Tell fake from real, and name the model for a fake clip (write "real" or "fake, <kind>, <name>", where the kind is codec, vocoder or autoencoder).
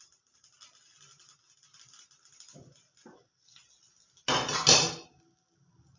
real